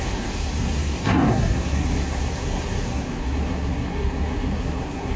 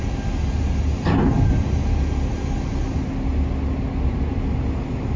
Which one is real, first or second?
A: second